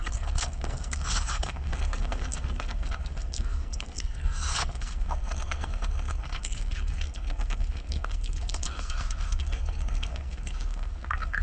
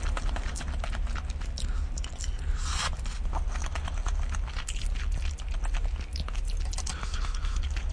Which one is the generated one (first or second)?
first